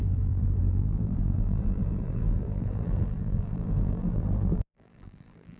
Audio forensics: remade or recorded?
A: remade